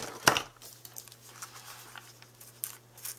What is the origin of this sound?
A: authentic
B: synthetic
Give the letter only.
A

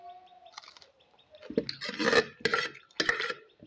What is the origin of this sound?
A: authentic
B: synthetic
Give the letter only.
A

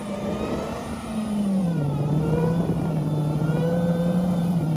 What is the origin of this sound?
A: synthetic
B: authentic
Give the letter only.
A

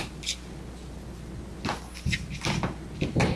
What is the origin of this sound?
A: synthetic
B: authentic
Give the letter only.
B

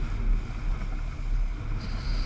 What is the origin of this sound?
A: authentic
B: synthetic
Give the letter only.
A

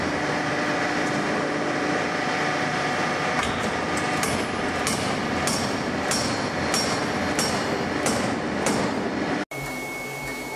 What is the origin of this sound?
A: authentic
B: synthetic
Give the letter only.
A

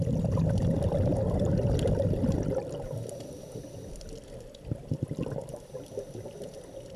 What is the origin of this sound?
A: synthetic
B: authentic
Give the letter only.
A